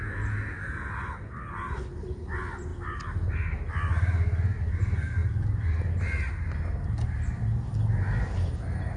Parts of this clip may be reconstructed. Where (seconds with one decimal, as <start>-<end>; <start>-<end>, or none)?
none